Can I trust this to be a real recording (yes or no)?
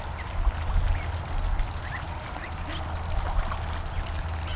yes